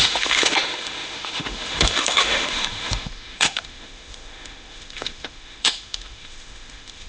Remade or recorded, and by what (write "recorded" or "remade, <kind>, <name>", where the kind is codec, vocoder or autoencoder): remade, autoencoder, DAC-VAE